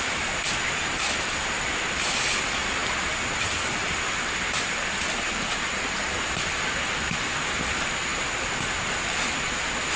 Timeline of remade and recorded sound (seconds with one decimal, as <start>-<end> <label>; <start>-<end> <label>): 0.0-10.0 recorded